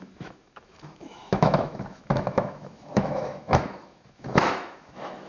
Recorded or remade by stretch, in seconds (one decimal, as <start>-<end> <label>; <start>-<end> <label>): 0.0-5.3 remade